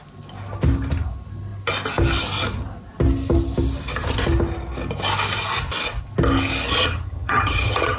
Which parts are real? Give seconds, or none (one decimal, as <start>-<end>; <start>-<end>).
0.0-6.7